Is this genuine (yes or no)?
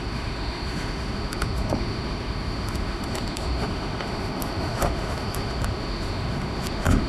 no